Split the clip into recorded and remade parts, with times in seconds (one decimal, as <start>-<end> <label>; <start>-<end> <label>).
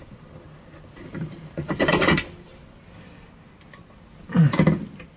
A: 0.0-1.9 remade; 1.9-5.2 recorded